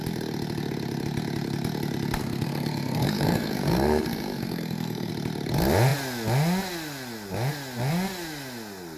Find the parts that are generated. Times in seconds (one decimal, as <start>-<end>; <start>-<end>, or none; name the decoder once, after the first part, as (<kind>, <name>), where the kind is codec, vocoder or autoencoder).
2.2-5.1 (codec, SNAC)